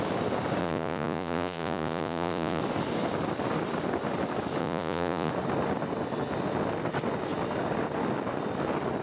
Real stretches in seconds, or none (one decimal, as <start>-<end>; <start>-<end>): 0.0-0.6; 2.6-4.6; 5.3-9.0